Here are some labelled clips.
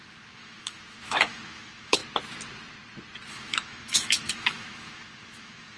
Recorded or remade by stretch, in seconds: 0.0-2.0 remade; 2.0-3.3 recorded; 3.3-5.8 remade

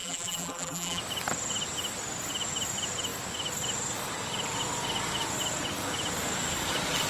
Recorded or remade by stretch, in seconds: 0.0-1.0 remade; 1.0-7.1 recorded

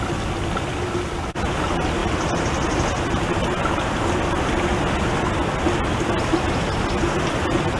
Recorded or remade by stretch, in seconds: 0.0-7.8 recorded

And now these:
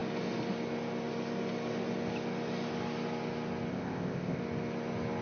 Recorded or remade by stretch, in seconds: 0.0-3.7 recorded; 3.7-4.4 remade; 4.4-5.2 recorded

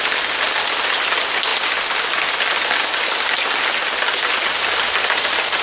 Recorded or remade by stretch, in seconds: 0.0-5.6 recorded